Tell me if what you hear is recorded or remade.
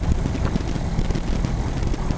recorded